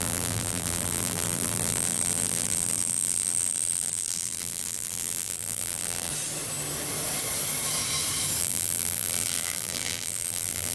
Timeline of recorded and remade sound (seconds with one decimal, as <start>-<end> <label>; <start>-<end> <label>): 0.0-6.1 remade; 6.1-8.4 recorded; 8.4-10.7 remade